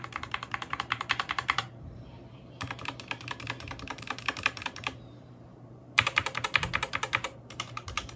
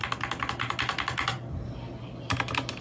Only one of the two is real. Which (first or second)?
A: second